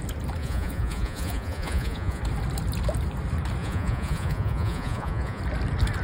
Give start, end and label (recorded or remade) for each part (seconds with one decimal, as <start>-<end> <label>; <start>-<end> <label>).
0.0-0.4 recorded; 0.4-2.2 remade; 2.2-3.6 recorded; 3.6-5.4 remade; 5.4-6.0 recorded

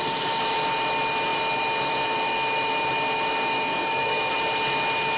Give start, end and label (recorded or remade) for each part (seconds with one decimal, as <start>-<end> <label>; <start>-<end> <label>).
0.0-3.7 recorded; 3.7-4.3 remade; 4.3-5.2 recorded

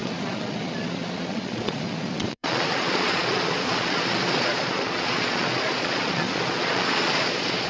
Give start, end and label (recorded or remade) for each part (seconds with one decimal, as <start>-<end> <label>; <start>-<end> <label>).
0.0-7.7 remade

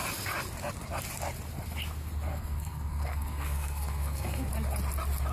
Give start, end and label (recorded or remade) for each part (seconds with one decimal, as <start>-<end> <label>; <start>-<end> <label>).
0.0-2.3 recorded; 2.3-4.5 remade; 4.5-5.3 recorded

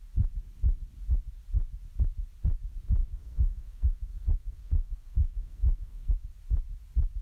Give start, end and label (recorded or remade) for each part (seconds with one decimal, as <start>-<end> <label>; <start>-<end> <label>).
0.0-3.0 recorded; 3.0-6.1 remade; 6.1-7.2 recorded

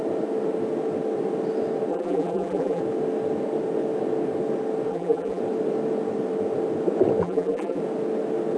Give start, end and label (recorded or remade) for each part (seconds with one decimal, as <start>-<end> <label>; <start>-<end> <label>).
0.0-1.9 recorded; 1.9-2.8 remade; 2.8-4.9 recorded; 4.9-5.4 remade; 5.4-7.2 recorded; 7.2-7.8 remade; 7.8-8.6 recorded

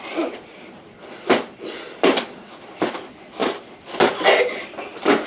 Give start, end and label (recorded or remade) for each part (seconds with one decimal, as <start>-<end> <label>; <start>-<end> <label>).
0.0-5.3 recorded